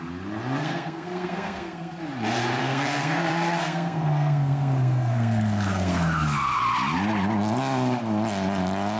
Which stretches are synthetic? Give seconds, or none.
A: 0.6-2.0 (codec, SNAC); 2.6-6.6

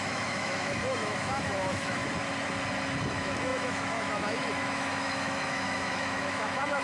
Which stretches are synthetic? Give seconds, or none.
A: 0.0-2.0 (autoencoder, DAC-VAE); 3.1-6.8

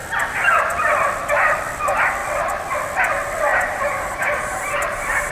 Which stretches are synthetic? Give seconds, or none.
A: 3.5-5.3 (vocoder, BigVGAN v2)

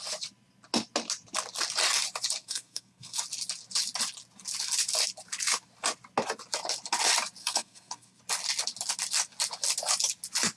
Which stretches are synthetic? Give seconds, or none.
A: 2.4-3.2 (codec, SNAC); 7.4-8.2

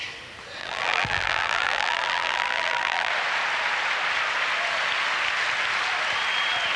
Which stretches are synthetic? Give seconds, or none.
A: 0.6-3.1 (vocoder, BigVGAN v2)